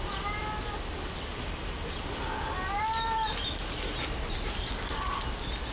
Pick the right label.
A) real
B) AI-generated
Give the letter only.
A